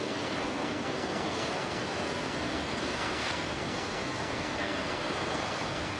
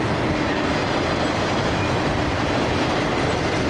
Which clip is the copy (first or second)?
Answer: first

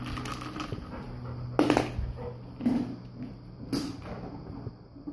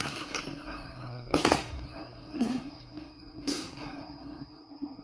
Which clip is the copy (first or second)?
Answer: second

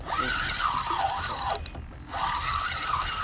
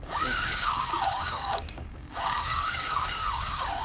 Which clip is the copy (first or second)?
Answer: second